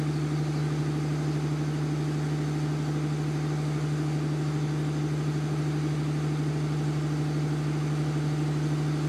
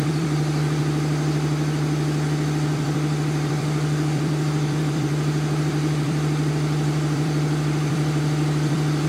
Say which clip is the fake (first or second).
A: second